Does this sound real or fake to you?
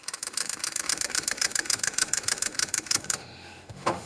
fake